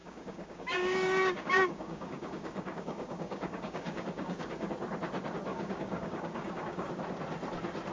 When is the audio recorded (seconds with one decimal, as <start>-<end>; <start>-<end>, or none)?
4.7-5.5; 6.9-7.9